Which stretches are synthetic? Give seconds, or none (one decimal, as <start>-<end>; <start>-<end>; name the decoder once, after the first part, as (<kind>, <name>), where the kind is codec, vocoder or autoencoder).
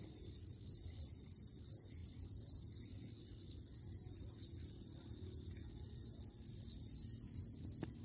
none